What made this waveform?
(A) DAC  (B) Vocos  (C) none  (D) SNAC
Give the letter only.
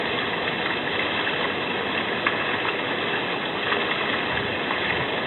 C